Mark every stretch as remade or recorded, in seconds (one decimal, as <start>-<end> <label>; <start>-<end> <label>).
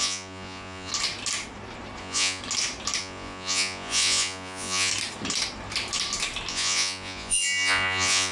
0.0-0.9 remade; 0.9-2.0 recorded; 2.0-2.4 remade; 2.4-3.0 recorded; 3.0-4.9 remade; 4.9-6.5 recorded; 6.5-8.3 remade